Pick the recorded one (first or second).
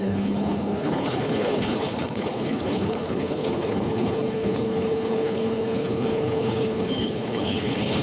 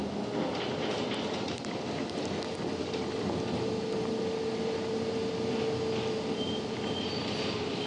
second